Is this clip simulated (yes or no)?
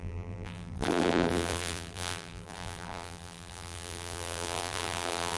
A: yes